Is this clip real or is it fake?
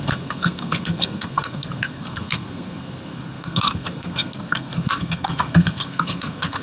fake